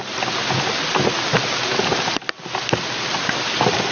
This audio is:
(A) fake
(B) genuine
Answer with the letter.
B